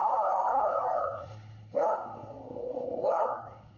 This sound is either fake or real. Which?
fake